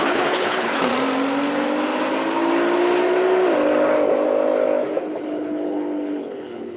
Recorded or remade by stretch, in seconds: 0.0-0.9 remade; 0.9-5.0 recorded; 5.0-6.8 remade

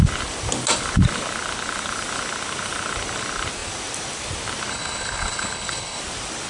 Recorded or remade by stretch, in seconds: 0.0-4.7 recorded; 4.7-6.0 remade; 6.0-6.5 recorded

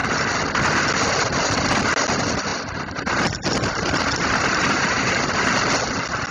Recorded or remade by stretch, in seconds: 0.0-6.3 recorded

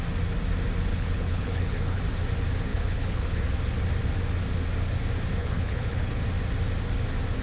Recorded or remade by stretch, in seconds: 0.0-0.9 recorded; 0.9-2.0 remade; 2.0-2.7 recorded; 2.7-3.4 remade; 3.4-5.4 recorded; 5.4-6.2 remade; 6.2-7.4 recorded

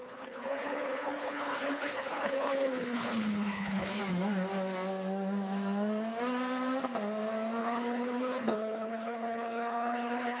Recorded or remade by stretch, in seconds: 0.0-4.0 remade; 4.0-7.6 recorded; 7.6-10.4 remade

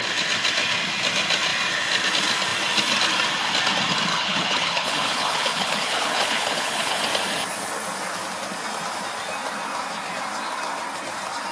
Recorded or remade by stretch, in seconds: 0.0-4.1 recorded; 4.1-7.0 remade; 7.0-11.5 recorded